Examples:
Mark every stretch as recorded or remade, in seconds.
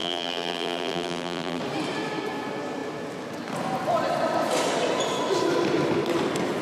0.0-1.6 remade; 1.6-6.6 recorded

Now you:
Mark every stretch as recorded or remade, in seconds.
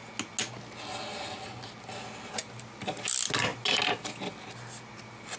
0.0-5.4 recorded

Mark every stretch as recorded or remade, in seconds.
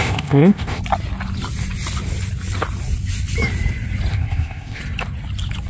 0.0-0.8 remade; 0.8-4.1 recorded; 4.1-4.8 remade; 4.8-5.7 recorded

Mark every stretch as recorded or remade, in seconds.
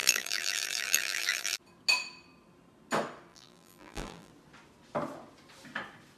0.0-1.6 remade; 1.6-3.3 recorded; 3.3-4.3 remade; 4.3-6.2 recorded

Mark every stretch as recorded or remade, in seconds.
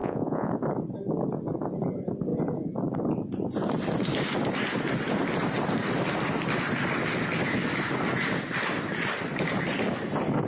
0.0-0.5 remade; 0.5-10.5 recorded